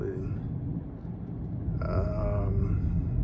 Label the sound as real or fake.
real